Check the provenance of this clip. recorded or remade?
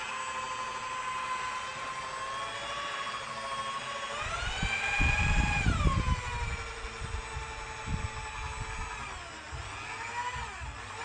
recorded